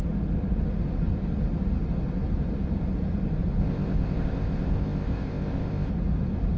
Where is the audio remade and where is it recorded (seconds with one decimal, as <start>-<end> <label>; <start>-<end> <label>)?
0.0-3.6 recorded; 3.6-5.9 remade; 5.9-6.6 recorded